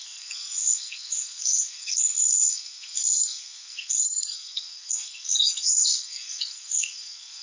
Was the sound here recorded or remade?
remade